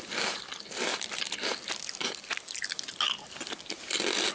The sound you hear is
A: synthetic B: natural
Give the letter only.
B